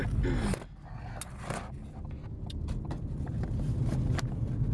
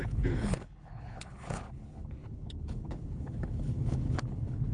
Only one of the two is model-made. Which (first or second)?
second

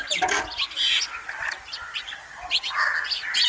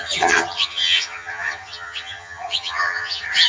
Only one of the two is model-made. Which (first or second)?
second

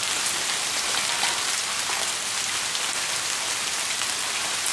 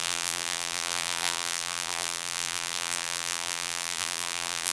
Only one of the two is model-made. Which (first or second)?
second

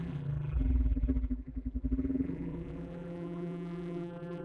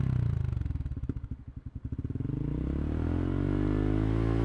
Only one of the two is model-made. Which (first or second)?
first